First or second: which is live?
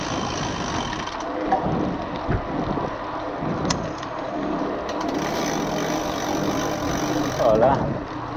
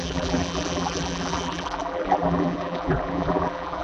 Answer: first